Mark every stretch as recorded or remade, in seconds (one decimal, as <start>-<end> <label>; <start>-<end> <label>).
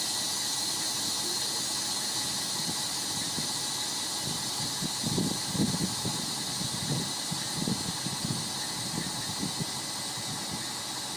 0.0-11.2 recorded